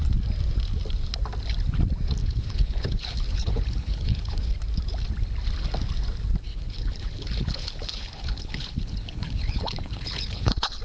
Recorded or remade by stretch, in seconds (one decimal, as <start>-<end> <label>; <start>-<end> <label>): 0.0-2.2 recorded; 2.2-4.5 remade; 4.5-6.5 recorded; 6.5-10.8 remade